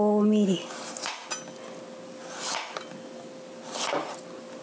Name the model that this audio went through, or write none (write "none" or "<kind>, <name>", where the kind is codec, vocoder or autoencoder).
none